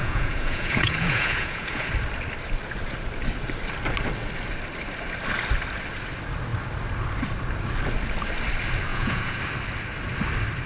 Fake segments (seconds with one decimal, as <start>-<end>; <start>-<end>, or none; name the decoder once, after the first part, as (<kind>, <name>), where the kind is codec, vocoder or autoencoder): 0.0-1.9 (vocoder, Vocos); 8.9-9.4